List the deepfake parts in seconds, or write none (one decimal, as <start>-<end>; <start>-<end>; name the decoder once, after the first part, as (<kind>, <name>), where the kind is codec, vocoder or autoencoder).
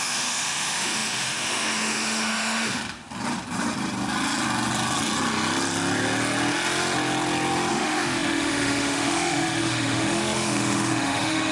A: 0.0-2.8 (autoencoder, DAC-VAE); 7.7-11.5